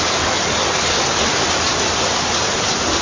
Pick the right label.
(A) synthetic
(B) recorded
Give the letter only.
B